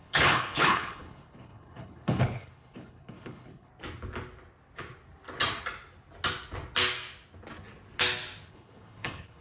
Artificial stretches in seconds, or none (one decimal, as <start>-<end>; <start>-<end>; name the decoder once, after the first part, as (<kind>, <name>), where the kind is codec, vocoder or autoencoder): 0.0-3.7 (codec, HILCodec); 8.5-9.4